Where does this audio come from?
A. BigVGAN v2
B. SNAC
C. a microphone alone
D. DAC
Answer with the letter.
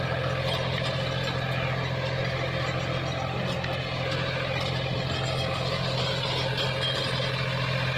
C